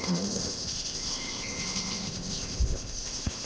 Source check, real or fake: fake